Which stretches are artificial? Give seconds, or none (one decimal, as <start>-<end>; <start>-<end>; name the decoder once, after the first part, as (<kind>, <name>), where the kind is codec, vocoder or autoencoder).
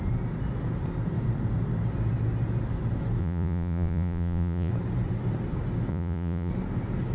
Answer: 3.2-4.7 (vocoder, Vocos); 5.9-6.5